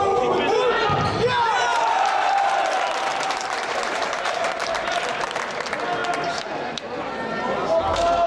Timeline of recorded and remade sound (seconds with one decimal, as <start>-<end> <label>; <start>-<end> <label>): 0.0-1.7 recorded; 1.7-2.6 remade; 2.6-3.1 recorded; 3.1-5.6 remade; 5.6-6.0 recorded; 6.0-6.5 remade; 6.5-8.3 recorded